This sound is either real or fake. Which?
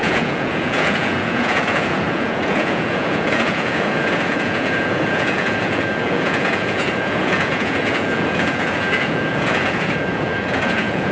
fake